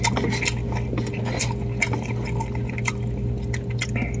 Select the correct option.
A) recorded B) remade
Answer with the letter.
A